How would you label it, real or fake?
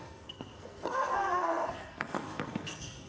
fake